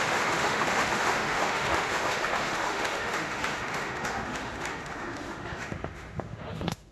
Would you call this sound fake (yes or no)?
yes